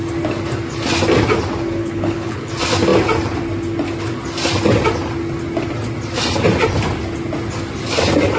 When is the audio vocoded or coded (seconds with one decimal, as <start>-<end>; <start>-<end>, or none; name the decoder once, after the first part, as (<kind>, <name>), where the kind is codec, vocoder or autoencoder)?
1.8-2.5 (codec, HILCodec)